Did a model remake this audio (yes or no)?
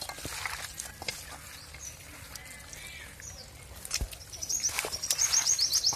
no